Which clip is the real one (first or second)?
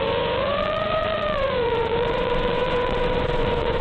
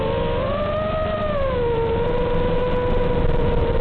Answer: second